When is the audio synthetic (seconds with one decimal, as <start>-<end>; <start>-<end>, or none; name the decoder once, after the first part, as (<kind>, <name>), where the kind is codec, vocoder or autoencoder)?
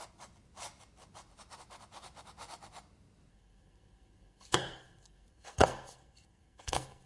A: 3.3-7.1 (codec, SNAC)